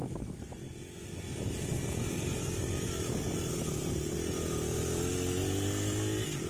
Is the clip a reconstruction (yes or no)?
no